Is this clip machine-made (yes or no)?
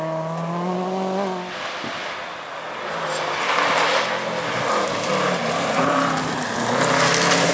no